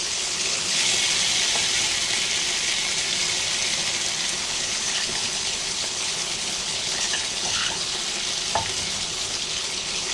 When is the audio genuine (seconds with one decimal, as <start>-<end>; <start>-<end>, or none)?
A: 0.9-4.4; 8.0-8.8